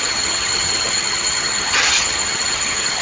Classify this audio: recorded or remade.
remade